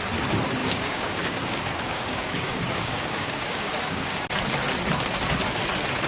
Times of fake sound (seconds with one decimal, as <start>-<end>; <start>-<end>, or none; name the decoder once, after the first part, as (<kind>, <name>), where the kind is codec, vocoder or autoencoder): 0.6-4.2 (codec, DAC)